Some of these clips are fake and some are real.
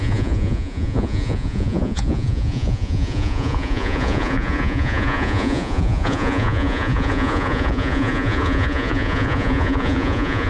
fake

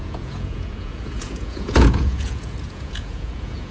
fake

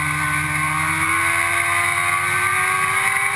real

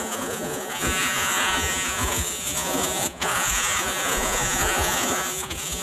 fake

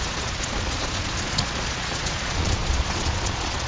fake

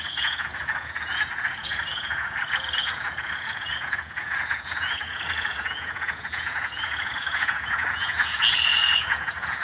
fake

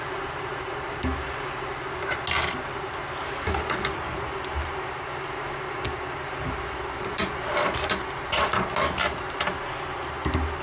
real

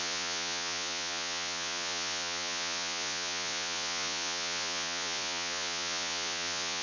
fake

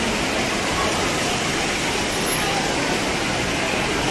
real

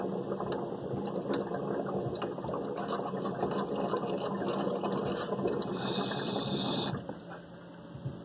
real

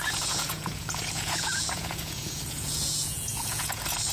fake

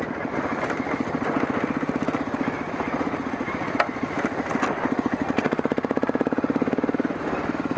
real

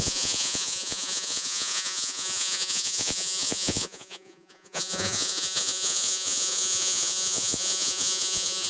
fake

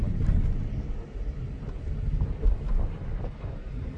real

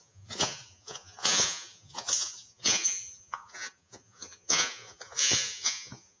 fake